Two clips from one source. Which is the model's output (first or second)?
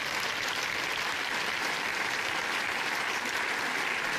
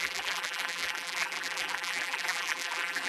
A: second